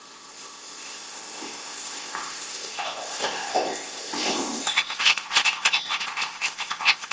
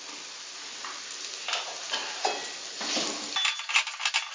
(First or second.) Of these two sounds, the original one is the second